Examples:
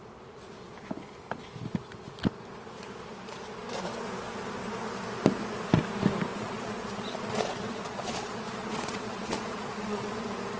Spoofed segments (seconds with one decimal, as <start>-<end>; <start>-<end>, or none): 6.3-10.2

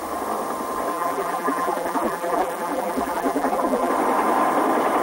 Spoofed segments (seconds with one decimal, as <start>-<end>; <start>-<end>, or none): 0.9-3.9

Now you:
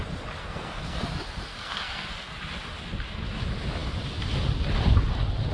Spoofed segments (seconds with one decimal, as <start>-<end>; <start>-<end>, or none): 0.4-1.0; 1.5-2.1